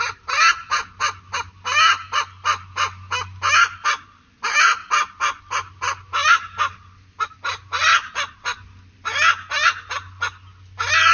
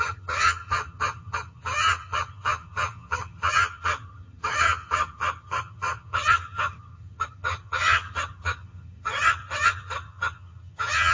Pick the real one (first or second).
first